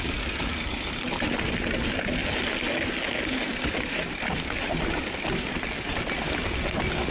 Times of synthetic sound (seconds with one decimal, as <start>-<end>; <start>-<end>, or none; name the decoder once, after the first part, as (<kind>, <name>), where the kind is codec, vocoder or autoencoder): 0.0-0.5 (vocoder, BigVGAN v2); 1.7-2.2; 3.9-7.1